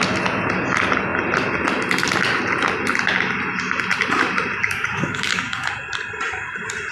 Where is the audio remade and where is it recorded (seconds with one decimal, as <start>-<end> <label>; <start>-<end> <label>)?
0.0-4.6 recorded; 4.6-5.7 remade; 5.7-6.9 recorded